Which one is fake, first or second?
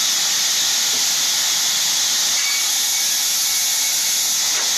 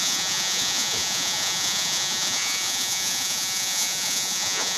second